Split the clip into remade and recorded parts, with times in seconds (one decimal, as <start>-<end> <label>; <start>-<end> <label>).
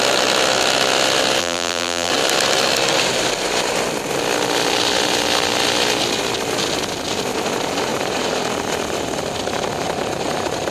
0.0-1.4 recorded; 1.4-2.1 remade; 2.1-10.7 recorded